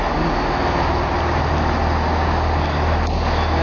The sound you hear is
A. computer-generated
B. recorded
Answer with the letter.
B